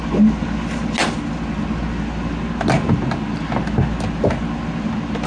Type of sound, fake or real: real